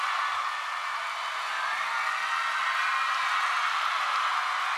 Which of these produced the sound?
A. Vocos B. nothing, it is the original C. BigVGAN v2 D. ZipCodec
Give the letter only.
B